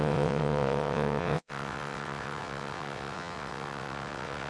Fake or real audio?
fake